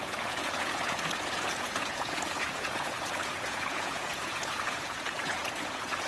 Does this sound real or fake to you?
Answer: fake